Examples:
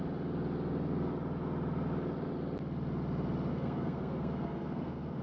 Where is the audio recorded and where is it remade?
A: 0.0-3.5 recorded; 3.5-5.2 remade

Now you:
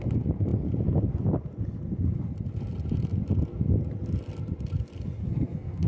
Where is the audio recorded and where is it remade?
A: 0.0-5.2 recorded; 5.2-5.9 remade

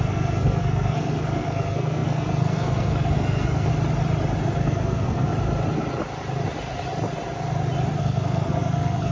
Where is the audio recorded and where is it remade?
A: 0.0-3.7 remade; 3.7-4.4 recorded; 4.4-5.3 remade; 5.3-8.0 recorded; 8.0-9.1 remade